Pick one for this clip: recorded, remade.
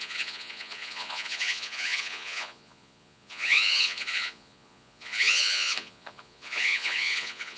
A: remade